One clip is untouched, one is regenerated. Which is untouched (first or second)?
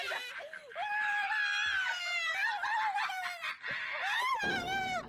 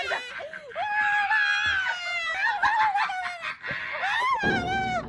second